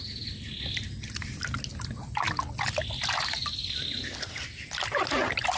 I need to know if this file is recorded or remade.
recorded